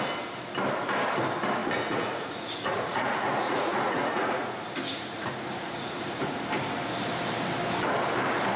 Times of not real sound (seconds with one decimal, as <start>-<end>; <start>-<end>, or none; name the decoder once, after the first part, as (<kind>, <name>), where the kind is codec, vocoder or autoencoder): 1.6-6.4 (vocoder, Vocos)